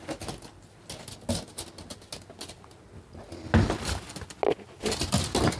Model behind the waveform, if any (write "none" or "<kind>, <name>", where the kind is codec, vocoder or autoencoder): none